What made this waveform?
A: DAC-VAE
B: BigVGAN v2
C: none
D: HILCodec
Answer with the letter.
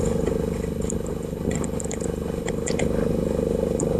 D